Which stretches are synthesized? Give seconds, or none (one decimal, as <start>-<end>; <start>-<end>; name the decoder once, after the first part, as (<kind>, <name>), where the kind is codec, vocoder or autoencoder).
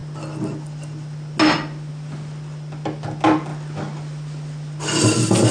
none